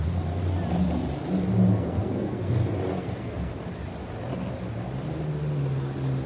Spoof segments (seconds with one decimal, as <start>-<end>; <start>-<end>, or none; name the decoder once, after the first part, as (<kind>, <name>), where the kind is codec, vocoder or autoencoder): 1.7-2.5 (codec, SNAC); 2.9-3.5